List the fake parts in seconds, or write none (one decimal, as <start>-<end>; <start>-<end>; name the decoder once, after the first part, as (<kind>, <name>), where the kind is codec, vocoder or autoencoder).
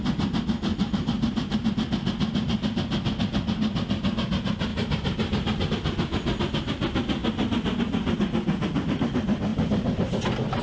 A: 0.7-1.7 (vocoder, BigVGAN v2); 4.7-5.7; 9.5-10.2